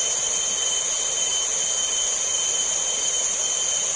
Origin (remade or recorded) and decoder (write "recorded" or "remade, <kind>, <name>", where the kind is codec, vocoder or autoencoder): recorded